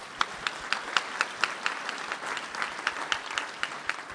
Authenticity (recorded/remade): recorded